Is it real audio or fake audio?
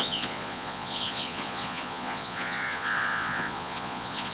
fake